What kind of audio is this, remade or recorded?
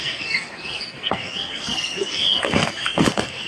remade